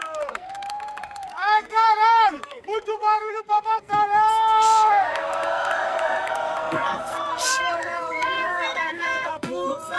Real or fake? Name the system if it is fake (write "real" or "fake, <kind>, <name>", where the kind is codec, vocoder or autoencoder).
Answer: fake, codec, SNAC